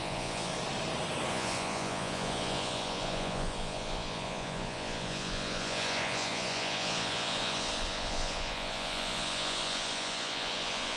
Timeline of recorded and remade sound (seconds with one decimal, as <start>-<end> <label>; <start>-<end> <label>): 0.0-0.5 remade; 0.5-1.3 recorded; 1.3-11.0 remade